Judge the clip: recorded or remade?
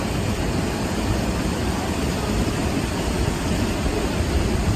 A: recorded